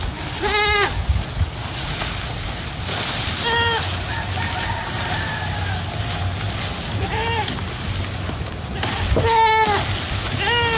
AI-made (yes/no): no